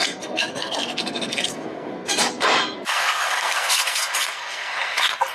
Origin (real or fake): fake